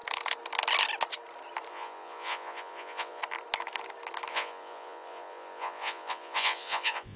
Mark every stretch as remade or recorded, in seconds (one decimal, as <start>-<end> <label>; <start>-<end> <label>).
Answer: 0.0-1.7 recorded; 1.7-3.2 remade; 3.2-4.3 recorded; 4.3-7.2 remade